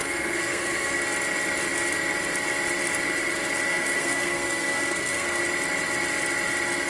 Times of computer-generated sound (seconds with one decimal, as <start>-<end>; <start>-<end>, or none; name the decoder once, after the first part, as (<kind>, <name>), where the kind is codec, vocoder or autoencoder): 0.0-1.0 (codec, SNAC); 3.7-5.4

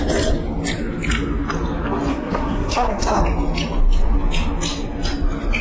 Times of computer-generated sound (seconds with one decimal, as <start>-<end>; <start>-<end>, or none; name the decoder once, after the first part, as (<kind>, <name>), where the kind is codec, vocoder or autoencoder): 2.1-3.2 (codec, SNAC)

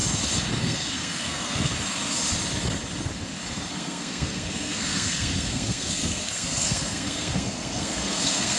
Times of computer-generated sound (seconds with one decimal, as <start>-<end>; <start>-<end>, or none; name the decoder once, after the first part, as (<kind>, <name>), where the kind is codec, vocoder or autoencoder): 0.6-1.7 (codec, SNAC); 3.7-8.6

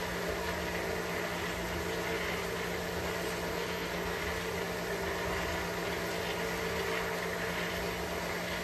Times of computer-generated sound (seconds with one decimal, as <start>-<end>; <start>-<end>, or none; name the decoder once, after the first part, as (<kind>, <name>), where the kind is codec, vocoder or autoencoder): 3.5-4.2 (codec, SNAC)

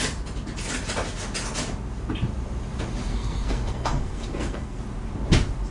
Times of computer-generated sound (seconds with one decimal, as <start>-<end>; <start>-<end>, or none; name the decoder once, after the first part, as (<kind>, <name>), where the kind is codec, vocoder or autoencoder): 3.1-4.8 (codec, SNAC)

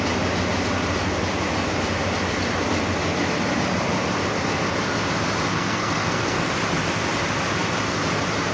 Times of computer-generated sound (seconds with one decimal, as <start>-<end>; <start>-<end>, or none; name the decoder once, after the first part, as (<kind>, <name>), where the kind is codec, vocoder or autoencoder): 5.5-6.5 (codec, SNAC)